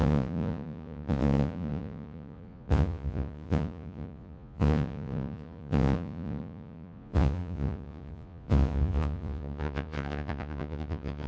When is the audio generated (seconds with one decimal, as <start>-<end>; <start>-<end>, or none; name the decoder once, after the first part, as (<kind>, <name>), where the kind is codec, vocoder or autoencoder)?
0.0-11.3 (vocoder, Vocos)